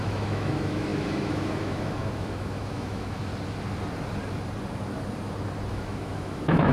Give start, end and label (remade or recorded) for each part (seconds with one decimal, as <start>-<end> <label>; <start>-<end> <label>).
0.0-3.3 remade; 3.3-5.7 recorded; 5.7-6.7 remade